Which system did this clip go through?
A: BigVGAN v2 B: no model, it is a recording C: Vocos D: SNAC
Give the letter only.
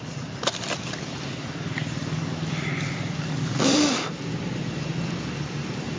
B